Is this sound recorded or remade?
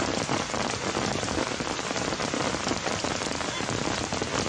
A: recorded